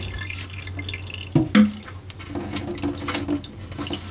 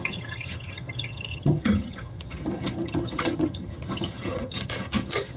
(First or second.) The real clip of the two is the first